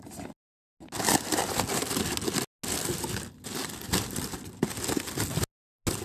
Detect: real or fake real